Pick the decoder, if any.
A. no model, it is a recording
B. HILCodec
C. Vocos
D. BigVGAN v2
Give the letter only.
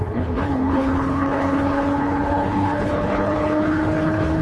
B